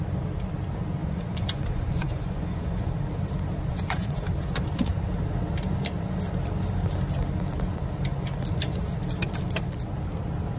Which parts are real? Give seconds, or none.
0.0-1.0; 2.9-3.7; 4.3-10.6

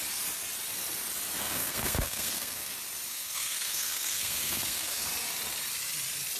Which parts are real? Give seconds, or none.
0.0-1.4; 2.7-3.1; 5.1-6.4